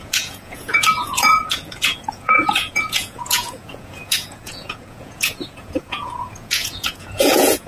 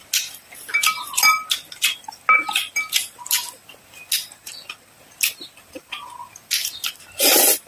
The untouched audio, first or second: second